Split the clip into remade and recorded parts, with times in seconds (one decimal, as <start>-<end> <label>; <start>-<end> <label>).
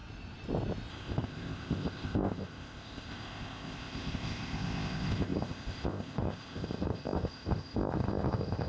0.0-0.9 recorded; 0.9-8.7 remade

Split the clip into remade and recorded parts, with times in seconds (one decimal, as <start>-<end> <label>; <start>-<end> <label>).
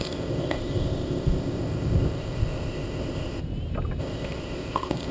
0.0-3.4 remade; 3.4-4.0 recorded; 4.0-5.1 remade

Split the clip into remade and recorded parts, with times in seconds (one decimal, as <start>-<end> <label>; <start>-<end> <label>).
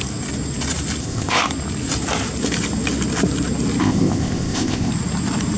0.0-1.0 recorded; 1.0-1.5 remade; 1.5-3.8 recorded; 3.8-4.9 remade; 4.9-5.6 recorded